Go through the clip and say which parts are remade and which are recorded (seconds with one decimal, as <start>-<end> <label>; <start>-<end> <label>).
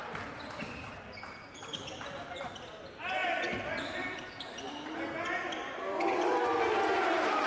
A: 0.0-0.6 remade; 0.6-3.2 recorded; 3.2-6.4 remade; 6.4-7.5 recorded